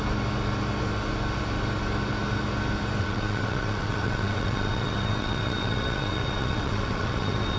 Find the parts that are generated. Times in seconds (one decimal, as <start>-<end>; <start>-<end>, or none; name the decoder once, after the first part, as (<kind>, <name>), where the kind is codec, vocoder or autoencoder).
3.0-7.6 (vocoder, WaveNeXt)